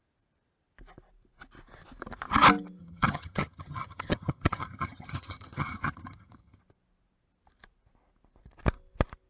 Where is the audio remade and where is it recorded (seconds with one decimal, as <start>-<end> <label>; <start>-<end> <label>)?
0.0-2.8 recorded; 2.8-6.6 remade; 6.6-9.3 recorded